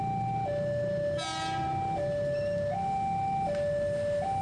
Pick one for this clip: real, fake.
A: real